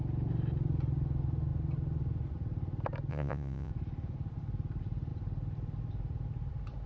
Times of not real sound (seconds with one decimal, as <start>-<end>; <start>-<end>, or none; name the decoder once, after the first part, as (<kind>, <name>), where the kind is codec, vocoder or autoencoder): 3.1-3.7 (vocoder, Vocos)